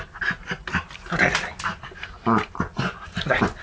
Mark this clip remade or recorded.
recorded